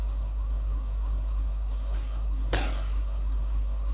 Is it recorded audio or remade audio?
remade